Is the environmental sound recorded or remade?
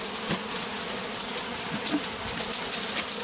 recorded